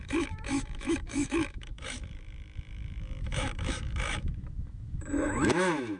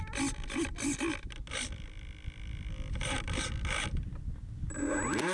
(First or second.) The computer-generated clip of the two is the first